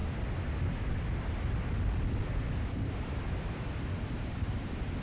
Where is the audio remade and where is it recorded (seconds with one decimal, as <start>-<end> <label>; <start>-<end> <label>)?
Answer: 0.0-5.0 recorded

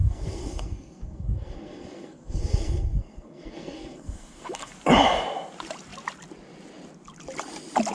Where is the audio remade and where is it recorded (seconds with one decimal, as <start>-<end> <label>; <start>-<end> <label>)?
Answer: 0.0-4.7 remade; 4.7-7.9 recorded

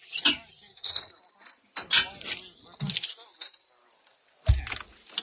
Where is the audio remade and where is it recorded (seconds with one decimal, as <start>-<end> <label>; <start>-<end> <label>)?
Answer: 0.0-5.2 recorded

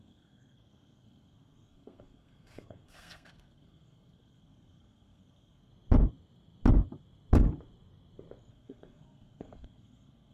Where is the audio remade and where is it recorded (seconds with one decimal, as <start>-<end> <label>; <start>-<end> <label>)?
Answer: 0.0-5.7 remade; 5.7-8.5 recorded; 8.5-10.3 remade

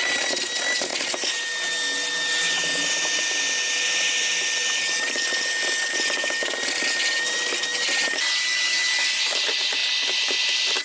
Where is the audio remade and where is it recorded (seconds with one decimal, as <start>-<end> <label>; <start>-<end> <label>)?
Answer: 0.0-10.8 recorded